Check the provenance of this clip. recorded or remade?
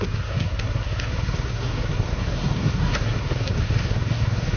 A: remade